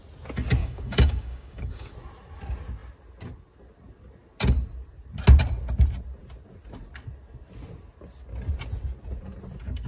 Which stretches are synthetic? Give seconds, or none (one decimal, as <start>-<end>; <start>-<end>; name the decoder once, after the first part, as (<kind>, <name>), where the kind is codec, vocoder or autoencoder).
0.6-1.9 (codec, DAC)